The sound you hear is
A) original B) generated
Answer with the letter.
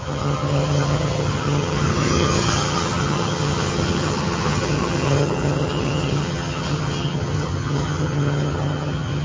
B